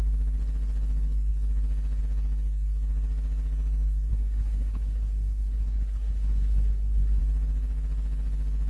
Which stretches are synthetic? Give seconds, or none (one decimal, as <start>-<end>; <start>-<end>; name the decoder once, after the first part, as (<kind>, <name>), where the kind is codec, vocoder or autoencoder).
4.1-7.2 (codec, SNAC)